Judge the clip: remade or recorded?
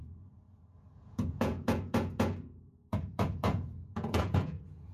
remade